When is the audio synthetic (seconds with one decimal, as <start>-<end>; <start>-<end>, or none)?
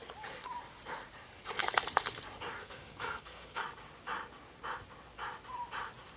2.6-3.6